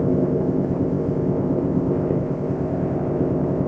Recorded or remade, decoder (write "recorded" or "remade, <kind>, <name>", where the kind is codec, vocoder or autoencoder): remade, codec, ZipCodec